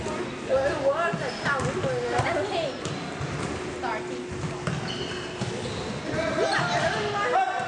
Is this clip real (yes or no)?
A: yes